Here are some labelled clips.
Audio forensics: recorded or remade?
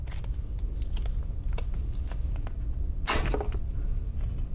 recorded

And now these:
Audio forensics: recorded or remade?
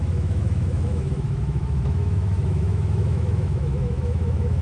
remade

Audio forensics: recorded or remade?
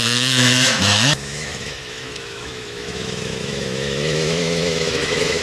remade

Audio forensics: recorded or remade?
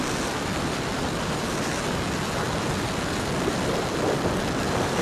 recorded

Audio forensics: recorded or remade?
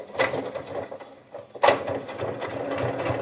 recorded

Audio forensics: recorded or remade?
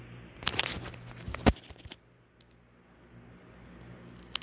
recorded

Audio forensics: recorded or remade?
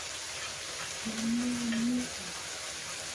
recorded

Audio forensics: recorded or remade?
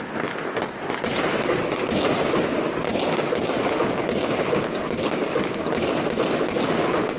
recorded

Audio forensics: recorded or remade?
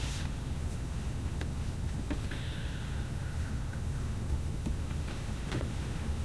remade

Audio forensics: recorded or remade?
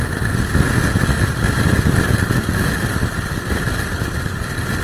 recorded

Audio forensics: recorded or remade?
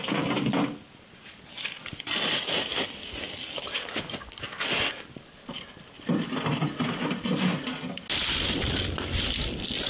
recorded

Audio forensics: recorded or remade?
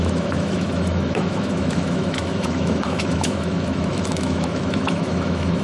remade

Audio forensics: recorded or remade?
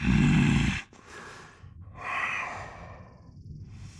recorded